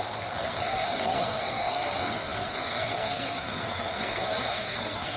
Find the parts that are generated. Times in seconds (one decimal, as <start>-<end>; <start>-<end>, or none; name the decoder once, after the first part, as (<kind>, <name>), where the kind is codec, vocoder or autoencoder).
0.0-5.2 (codec, SNAC)